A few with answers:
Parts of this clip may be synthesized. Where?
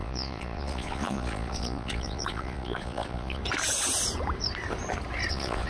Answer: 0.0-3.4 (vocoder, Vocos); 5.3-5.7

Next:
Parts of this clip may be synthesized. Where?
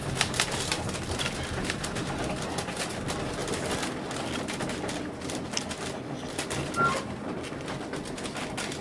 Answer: none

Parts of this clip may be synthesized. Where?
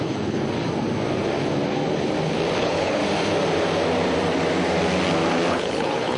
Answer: 0.0-0.4 (codec, HILCodec); 2.6-3.0; 5.5-6.2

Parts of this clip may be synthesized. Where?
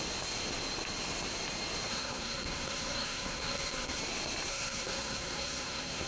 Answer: 1.9-4.0 (codec, SNAC); 4.5-6.1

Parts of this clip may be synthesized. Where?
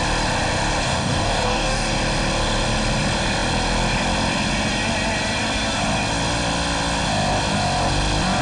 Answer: 0.8-1.9 (codec, DAC)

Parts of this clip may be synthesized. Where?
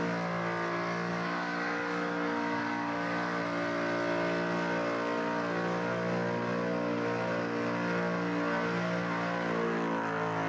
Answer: 1.1-3.4 (codec, DAC)